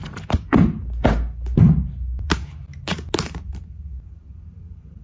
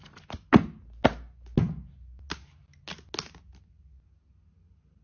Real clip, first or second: second